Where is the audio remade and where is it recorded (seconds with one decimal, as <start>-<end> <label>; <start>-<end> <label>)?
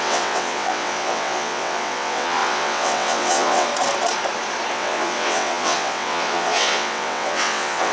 0.0-3.7 remade; 3.7-4.7 recorded; 4.7-7.9 remade